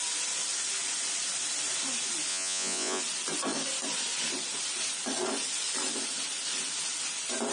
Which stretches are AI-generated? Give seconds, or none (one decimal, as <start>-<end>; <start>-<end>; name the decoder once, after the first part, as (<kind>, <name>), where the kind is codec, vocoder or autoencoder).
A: 2.3-3.0 (vocoder, Vocos)